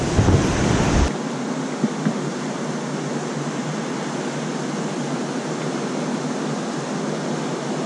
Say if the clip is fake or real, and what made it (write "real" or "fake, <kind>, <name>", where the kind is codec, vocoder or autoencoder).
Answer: real